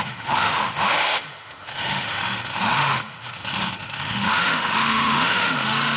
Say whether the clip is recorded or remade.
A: remade